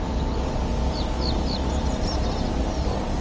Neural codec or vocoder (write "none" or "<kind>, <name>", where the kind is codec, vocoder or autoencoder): none